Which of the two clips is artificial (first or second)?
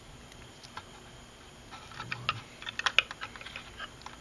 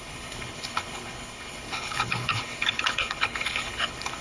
second